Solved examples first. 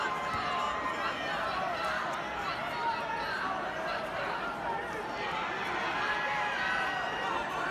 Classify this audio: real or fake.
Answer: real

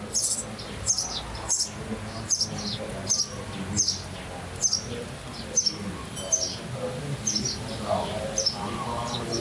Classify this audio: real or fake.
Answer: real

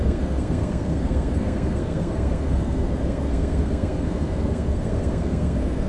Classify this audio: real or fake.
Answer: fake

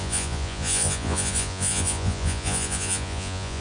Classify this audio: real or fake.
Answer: fake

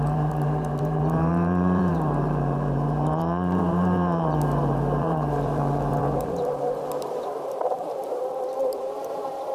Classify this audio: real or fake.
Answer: fake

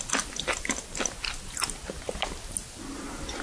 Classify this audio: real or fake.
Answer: real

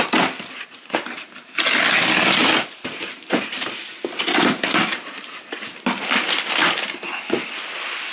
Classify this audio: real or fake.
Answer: real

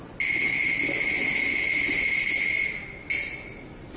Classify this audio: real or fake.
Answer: real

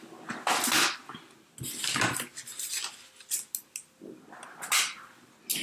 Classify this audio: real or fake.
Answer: real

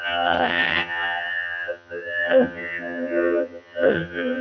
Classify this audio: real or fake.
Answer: fake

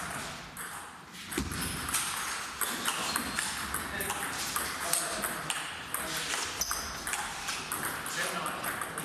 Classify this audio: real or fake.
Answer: real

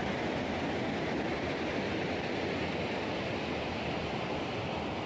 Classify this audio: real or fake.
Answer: real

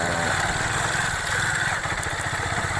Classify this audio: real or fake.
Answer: real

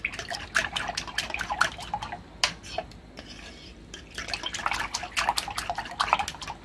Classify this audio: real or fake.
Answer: real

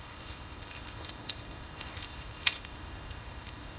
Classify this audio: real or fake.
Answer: fake